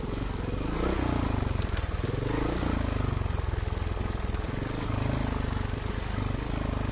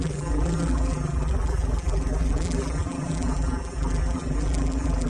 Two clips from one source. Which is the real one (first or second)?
first